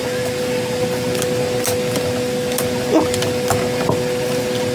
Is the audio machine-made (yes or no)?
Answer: no